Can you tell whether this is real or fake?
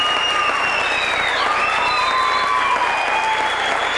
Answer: real